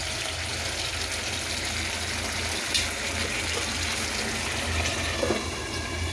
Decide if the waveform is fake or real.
real